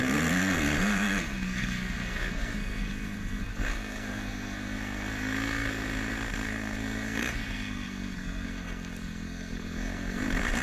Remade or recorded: remade